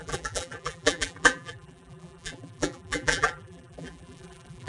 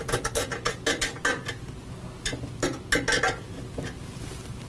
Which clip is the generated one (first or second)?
first